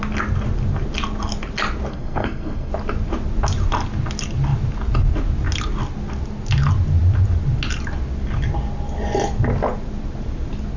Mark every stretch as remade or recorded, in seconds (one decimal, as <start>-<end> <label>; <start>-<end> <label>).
0.0-1.9 recorded; 1.9-2.7 remade; 2.7-10.8 recorded